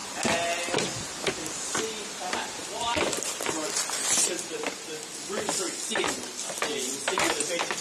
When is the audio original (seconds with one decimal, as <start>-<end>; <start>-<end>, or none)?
0.0-2.6; 4.5-7.8